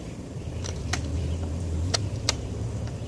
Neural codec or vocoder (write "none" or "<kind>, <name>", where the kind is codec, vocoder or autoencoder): vocoder, BigVGAN v2